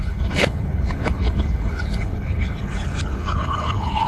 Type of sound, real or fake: fake